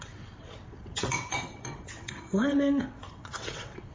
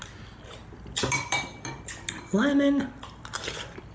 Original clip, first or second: second